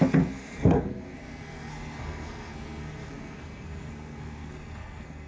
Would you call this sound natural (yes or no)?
no